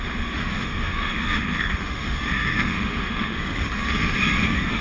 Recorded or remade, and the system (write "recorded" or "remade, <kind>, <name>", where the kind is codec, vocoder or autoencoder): remade, autoencoder, DAC-VAE